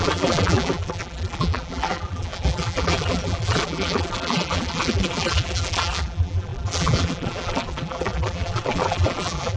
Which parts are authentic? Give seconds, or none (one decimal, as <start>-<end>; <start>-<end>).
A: none